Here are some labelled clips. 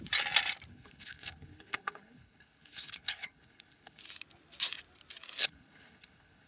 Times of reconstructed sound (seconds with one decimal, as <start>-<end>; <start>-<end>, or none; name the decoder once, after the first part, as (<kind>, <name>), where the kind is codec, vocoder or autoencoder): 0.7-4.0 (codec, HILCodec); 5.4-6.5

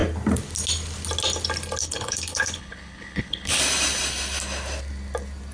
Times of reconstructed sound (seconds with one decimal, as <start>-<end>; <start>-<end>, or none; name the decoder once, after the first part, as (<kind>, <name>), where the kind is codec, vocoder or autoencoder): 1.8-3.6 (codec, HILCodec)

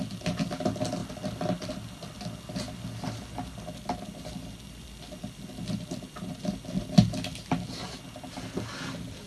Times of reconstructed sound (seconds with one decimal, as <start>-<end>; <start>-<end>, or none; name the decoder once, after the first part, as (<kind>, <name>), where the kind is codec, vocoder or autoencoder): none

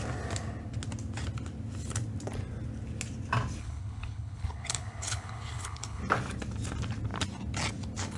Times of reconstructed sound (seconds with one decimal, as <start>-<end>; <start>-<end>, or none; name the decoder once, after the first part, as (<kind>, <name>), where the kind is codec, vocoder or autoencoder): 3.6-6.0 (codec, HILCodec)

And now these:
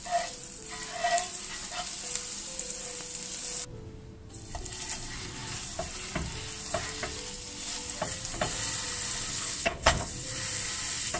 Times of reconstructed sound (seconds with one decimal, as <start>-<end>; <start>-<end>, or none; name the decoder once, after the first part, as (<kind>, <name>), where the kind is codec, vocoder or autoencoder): 9.3-10.1 (codec, HILCodec)

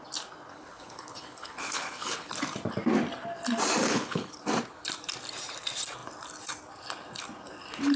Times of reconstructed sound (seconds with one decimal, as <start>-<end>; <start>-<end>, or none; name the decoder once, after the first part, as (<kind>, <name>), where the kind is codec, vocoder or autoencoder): 0.5-2.3 (codec, HILCodec); 3.8-4.4